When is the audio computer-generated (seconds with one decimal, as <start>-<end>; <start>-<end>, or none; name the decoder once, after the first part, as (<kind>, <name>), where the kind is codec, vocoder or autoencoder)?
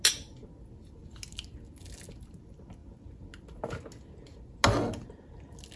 none